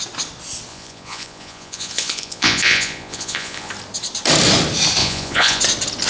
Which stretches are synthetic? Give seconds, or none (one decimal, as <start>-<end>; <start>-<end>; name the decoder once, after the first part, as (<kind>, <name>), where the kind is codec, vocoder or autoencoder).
0.7-3.7 (vocoder, Vocos); 5.0-5.6